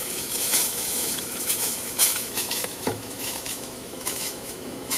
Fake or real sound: fake